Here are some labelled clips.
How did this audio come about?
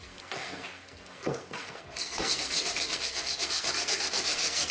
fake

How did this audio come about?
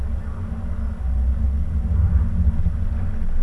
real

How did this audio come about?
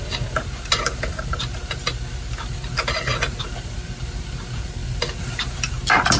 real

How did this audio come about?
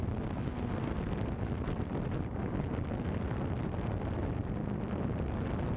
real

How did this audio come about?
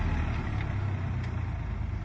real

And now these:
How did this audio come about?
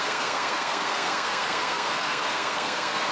fake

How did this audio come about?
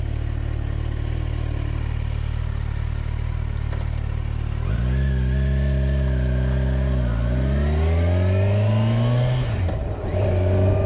real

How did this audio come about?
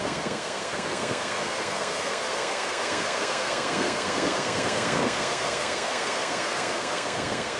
fake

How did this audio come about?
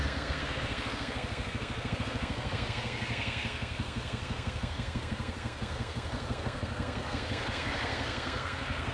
fake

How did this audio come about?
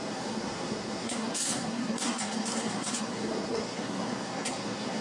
fake